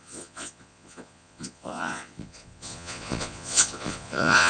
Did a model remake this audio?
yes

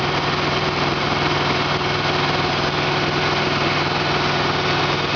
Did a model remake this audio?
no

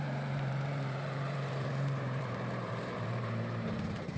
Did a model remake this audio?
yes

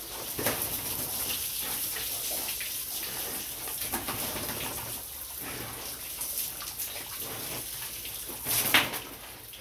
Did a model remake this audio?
no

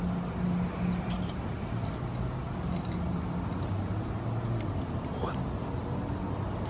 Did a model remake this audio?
no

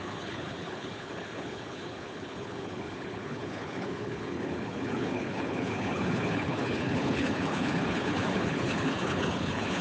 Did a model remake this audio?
yes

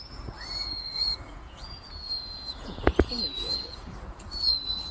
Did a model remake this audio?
yes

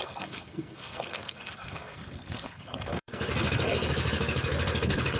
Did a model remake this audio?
yes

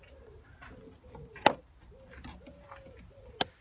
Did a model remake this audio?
no